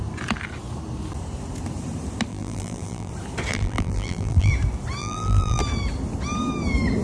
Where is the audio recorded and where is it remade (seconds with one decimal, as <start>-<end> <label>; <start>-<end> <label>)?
0.0-2.3 recorded; 2.3-3.1 remade; 3.1-3.5 recorded; 3.5-4.5 remade; 4.5-5.0 recorded; 5.0-5.6 remade; 5.6-7.0 recorded